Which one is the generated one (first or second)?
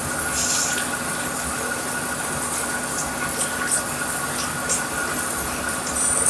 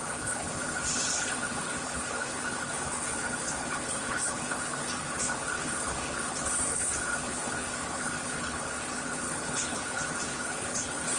second